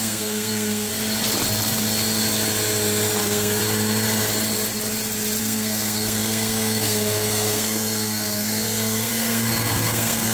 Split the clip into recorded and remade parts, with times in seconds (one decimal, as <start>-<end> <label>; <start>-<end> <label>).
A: 0.0-0.9 remade; 0.9-3.2 recorded; 3.2-3.6 remade; 3.6-5.4 recorded; 5.4-10.3 remade